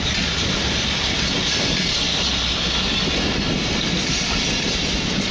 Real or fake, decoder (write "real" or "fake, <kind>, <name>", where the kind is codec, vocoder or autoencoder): real